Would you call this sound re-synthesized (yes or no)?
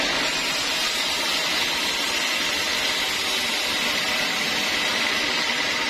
no